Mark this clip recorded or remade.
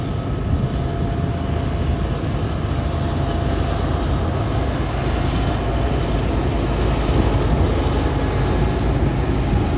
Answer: recorded